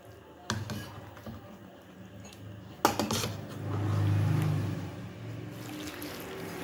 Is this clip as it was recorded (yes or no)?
yes